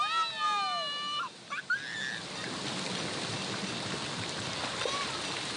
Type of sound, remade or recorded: recorded